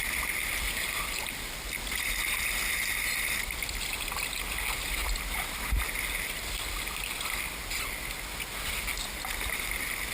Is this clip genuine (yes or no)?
yes